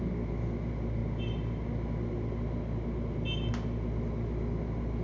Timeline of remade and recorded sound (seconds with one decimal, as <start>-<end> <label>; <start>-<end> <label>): 0.0-5.0 recorded